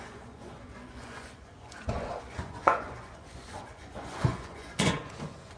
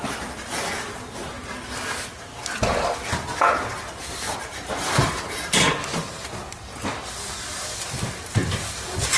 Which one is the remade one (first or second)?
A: first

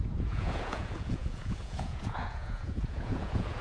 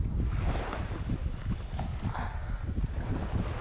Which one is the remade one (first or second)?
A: first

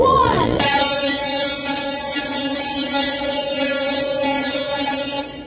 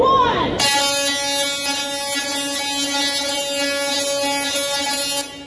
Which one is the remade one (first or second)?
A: first